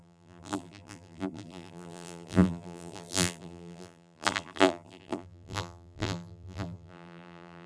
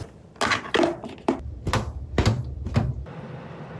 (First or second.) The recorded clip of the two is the second